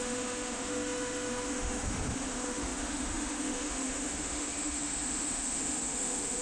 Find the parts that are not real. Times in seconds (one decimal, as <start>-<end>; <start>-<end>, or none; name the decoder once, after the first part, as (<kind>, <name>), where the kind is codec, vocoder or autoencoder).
0.0-6.4 (autoencoder, DAC-VAE)